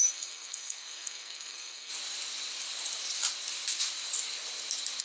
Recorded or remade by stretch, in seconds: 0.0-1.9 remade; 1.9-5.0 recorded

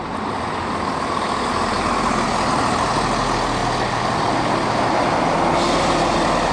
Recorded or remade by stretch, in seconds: 0.0-6.5 recorded

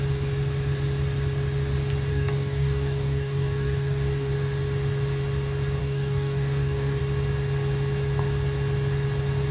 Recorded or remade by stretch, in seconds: 0.0-2.1 recorded; 2.1-4.3 remade; 4.3-5.8 recorded; 5.8-7.0 remade; 7.0-9.5 recorded

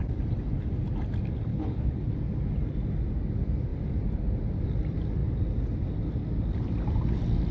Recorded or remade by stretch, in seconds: 0.0-1.5 recorded; 1.5-2.1 remade; 2.1-7.5 recorded

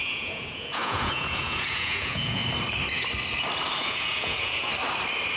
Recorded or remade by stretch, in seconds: 0.0-2.4 remade; 2.4-3.8 recorded; 3.8-4.7 remade; 4.7-5.4 recorded

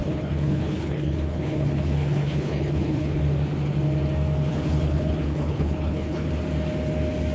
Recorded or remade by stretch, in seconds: 0.0-3.2 remade; 3.2-4.5 recorded; 4.5-6.3 remade; 6.3-7.3 recorded

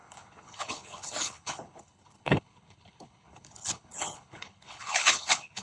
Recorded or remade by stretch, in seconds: 0.0-5.6 remade

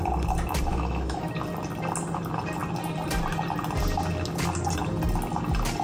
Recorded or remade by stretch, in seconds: 0.0-0.7 recorded; 0.7-1.3 remade; 1.3-5.8 recorded